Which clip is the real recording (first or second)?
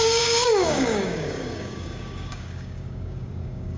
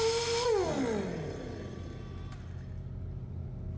second